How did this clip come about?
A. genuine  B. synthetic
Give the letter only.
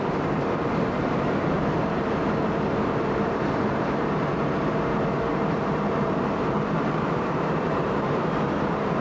B